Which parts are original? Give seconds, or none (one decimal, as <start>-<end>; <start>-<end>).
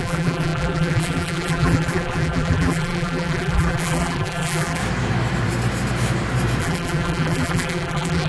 4.8-6.6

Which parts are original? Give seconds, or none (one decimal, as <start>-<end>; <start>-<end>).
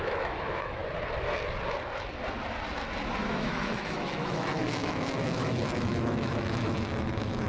0.8-3.2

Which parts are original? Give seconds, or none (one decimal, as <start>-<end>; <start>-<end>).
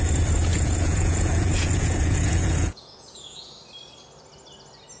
0.0-0.5; 3.5-5.0